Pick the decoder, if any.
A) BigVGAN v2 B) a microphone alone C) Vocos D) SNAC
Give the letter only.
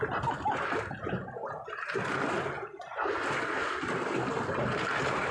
B